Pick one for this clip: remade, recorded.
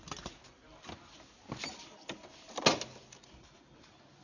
recorded